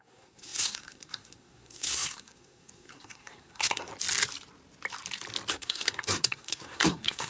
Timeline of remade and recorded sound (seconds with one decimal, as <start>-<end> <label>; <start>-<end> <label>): 0.0-3.9 remade; 3.9-5.5 recorded; 5.5-7.3 remade